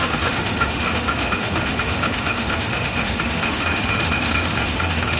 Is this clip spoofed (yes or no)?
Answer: yes